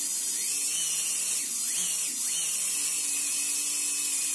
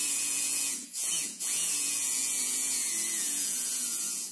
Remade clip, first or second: second